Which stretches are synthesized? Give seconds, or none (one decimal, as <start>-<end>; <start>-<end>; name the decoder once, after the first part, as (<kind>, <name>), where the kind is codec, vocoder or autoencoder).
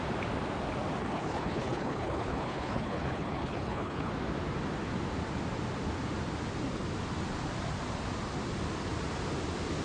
1.0-4.1 (codec, HILCodec)